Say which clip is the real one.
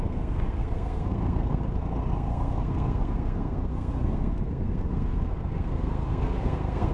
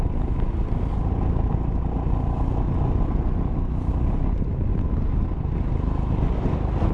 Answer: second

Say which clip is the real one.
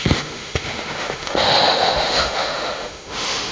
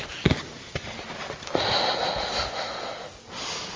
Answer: second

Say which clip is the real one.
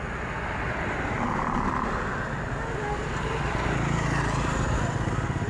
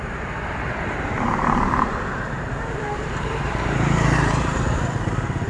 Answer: first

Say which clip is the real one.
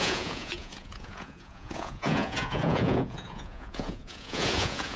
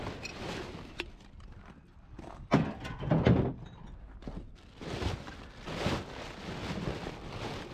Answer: second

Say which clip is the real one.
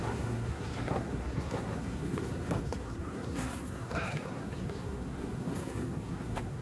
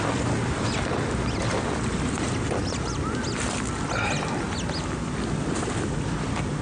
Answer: second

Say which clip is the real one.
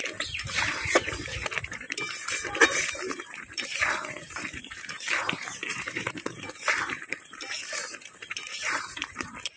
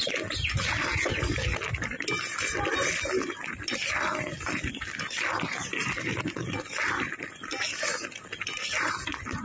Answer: second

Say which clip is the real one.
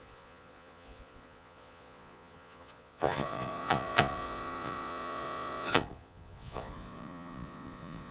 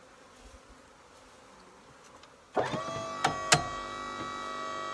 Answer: second